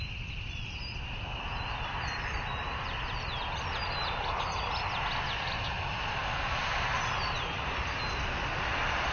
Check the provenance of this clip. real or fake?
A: real